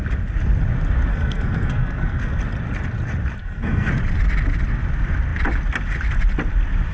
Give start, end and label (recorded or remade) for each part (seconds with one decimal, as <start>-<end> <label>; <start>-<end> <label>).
0.0-1.1 recorded; 1.1-2.4 remade; 2.4-3.4 recorded; 3.4-3.9 remade; 3.9-6.9 recorded